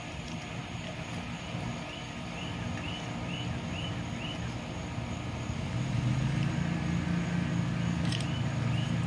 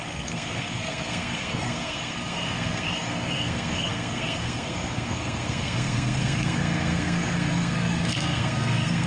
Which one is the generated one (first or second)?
second